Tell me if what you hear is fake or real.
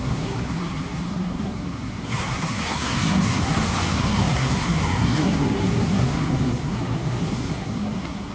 fake